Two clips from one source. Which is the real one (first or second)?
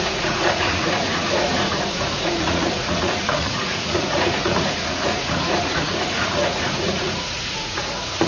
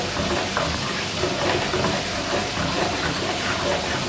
second